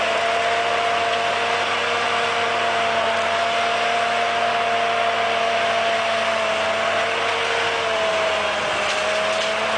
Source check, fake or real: real